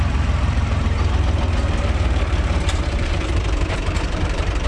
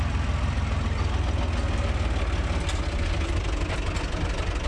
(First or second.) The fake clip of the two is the first